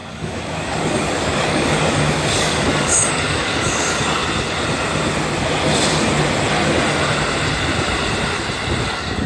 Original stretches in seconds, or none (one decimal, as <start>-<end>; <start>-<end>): 4.2-8.8